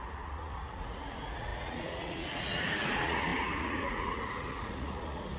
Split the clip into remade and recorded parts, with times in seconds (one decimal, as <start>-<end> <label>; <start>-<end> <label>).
0.0-5.4 remade